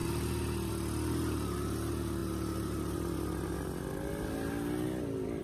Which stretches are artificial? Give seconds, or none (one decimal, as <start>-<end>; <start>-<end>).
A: none